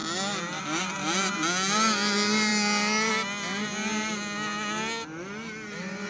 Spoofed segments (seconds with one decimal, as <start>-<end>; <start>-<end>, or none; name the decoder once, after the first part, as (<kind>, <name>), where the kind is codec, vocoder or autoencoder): none